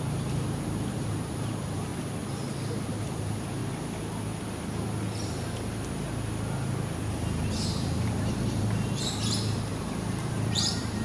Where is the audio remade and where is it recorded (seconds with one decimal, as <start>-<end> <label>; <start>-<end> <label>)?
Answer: 0.0-1.9 remade; 1.9-2.9 recorded; 2.9-3.6 remade; 3.6-7.5 recorded; 7.5-11.0 remade